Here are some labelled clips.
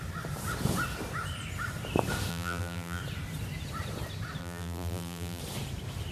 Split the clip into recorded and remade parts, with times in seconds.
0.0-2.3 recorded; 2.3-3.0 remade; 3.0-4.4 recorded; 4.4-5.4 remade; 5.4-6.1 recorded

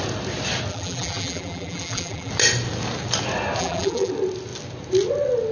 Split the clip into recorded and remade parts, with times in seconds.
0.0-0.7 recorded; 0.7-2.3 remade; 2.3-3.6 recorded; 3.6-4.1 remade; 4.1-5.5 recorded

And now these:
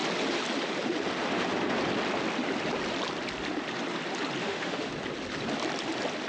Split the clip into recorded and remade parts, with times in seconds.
0.0-4.4 recorded; 4.4-4.9 remade; 4.9-6.3 recorded

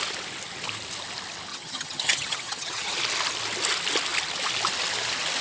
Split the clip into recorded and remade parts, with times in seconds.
0.0-1.5 recorded; 1.5-3.0 remade; 3.0-5.4 recorded